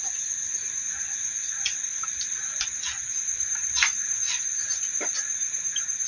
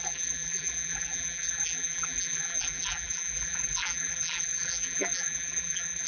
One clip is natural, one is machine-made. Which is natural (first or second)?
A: first